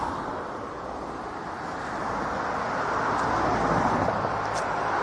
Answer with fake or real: real